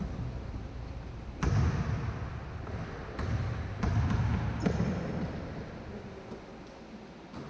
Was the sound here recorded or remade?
recorded